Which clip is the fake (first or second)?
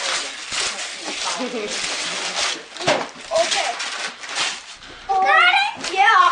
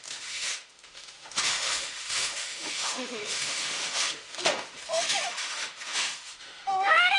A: second